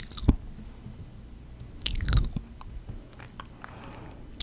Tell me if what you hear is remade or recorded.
recorded